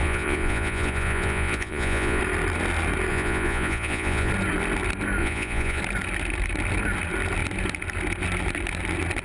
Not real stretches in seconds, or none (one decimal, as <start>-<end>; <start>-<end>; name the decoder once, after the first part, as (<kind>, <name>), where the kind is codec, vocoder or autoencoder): 0.0-2.2 (vocoder, Vocos); 3.1-4.3; 5.2-5.8